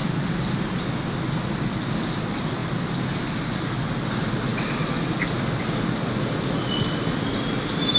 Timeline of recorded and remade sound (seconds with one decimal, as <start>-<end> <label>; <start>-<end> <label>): 0.0-8.0 recorded